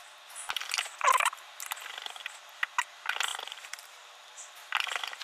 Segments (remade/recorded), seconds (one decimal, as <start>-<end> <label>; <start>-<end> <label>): 0.0-3.3 recorded; 3.3-4.0 remade; 4.0-5.2 recorded